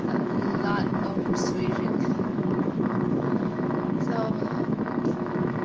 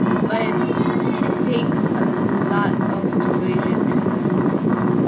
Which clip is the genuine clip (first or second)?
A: second